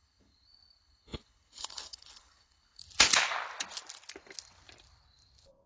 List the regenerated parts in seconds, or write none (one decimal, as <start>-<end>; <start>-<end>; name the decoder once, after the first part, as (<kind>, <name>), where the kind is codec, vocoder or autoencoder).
0.0-2.8 (codec, HILCodec)